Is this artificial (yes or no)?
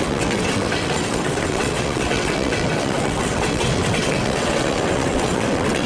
yes